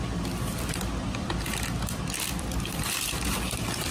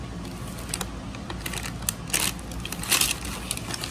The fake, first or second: first